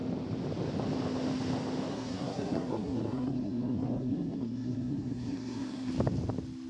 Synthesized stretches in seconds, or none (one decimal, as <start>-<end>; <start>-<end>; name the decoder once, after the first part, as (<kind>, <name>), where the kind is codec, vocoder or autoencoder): 1.9-5.9 (codec, SNAC)